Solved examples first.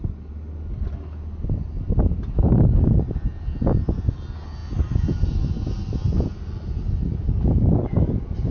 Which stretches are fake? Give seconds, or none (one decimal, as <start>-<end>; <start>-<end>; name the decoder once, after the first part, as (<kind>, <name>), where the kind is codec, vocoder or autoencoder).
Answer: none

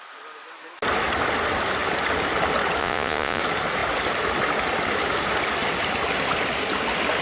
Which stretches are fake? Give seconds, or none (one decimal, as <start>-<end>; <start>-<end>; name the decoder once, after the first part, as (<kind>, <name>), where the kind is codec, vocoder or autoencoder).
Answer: 2.8-3.4 (vocoder, Vocos)

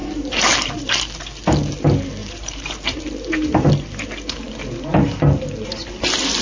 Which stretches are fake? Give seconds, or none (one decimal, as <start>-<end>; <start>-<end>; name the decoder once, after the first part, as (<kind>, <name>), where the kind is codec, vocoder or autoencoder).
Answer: 0.0-0.7 (vocoder, BigVGAN v2); 2.2-3.7

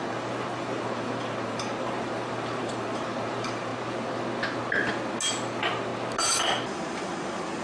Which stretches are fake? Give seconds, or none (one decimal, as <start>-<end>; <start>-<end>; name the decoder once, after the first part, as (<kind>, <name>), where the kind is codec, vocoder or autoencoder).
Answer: 0.0-3.7 (vocoder, BigVGAN v2); 5.3-5.9

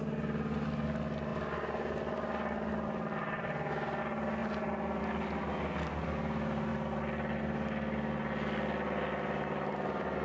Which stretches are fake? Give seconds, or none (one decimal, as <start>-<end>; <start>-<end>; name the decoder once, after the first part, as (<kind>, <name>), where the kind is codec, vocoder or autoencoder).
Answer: none

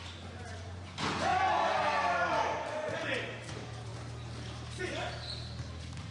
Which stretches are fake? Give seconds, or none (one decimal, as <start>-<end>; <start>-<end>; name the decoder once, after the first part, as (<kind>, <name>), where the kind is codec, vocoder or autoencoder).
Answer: none